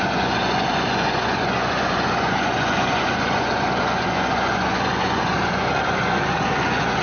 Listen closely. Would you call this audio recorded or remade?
remade